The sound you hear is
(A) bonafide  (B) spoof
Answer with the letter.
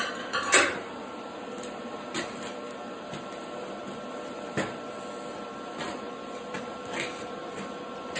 A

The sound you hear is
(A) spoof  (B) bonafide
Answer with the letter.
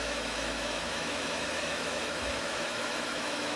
A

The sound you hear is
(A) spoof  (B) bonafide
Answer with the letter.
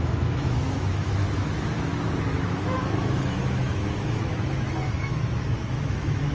A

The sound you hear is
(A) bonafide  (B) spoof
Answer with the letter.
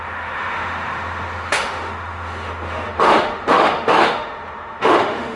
B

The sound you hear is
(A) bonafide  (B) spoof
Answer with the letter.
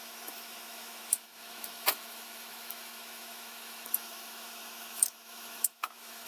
B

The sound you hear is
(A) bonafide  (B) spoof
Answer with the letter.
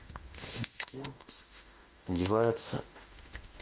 B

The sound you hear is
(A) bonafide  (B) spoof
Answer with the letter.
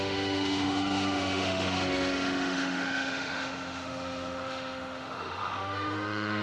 B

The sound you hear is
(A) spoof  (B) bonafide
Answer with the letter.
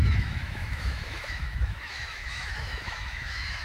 A